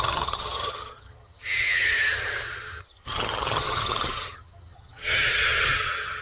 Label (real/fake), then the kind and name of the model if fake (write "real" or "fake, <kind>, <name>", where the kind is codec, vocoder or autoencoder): fake, vocoder, HiFi-GAN